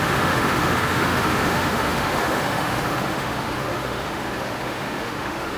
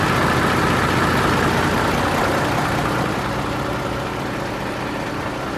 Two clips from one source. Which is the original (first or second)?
second